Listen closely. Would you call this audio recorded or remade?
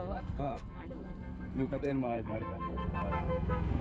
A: remade